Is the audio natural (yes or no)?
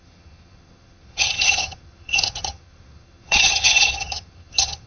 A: no